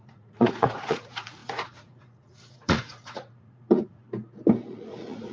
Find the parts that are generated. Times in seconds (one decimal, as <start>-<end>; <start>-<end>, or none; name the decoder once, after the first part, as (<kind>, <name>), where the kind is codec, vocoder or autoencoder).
0.0-4.0 (vocoder, Vocos); 4.7-5.3